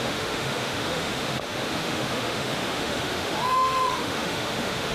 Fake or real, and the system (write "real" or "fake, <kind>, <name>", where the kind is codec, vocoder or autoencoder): fake, autoencoder, DAC-VAE